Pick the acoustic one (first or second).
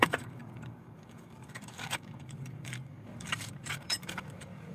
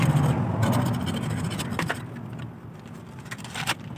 second